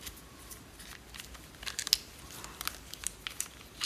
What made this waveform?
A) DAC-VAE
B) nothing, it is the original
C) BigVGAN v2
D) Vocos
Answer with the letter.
B